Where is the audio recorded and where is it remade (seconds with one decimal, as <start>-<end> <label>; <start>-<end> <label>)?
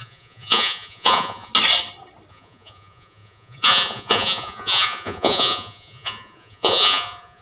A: 0.0-1.5 remade; 1.5-2.3 recorded; 2.3-7.4 remade